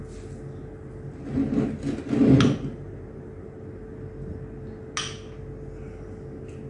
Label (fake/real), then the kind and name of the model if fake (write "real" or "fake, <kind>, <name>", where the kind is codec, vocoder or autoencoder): real